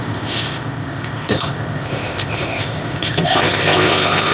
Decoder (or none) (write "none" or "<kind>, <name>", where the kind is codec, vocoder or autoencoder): codec, ZipCodec